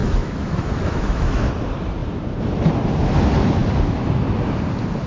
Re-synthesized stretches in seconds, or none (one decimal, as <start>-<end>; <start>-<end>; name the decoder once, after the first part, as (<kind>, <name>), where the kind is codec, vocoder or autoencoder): 0.0-1.5 (autoencoder, DAC-VAE)